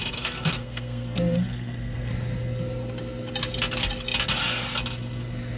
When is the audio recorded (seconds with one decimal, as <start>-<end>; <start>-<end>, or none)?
2.1-5.6